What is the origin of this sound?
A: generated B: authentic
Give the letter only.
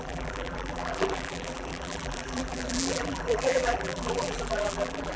A